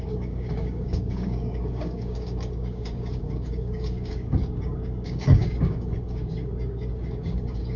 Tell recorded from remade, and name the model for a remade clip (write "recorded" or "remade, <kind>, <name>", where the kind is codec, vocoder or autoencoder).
remade, codec, DAC